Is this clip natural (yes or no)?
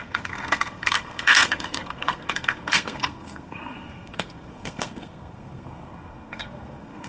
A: no